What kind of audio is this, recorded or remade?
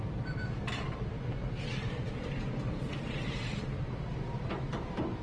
remade